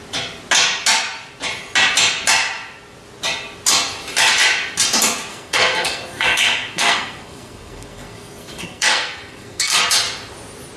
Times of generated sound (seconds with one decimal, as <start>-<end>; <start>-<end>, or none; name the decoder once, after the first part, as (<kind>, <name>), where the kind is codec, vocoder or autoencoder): 5.3-9.8 (codec, SNAC)